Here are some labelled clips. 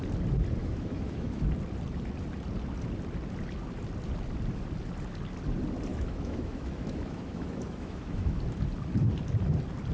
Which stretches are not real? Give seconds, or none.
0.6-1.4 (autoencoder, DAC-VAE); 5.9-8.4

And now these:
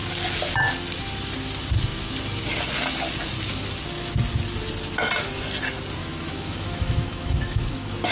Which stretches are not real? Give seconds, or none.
6.0-8.1 (autoencoder, DAC-VAE)

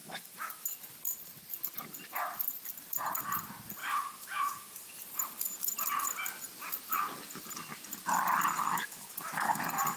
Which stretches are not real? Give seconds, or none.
0.0-0.7 (autoencoder, DAC-VAE); 3.8-5.0; 8.7-9.6

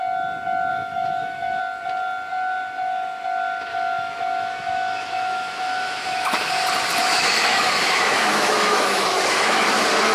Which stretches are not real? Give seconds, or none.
0.7-1.6 (autoencoder, DAC-VAE); 3.7-6.5; 7.0-9.7

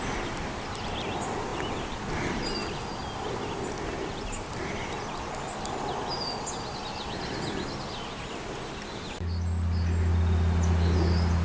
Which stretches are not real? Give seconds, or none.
none

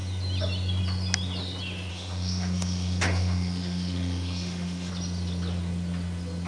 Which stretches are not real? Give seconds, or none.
1.9-4.9 (autoencoder, DAC-VAE)

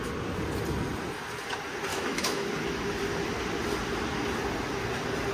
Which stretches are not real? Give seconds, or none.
1.9-2.5 (autoencoder, DAC-VAE)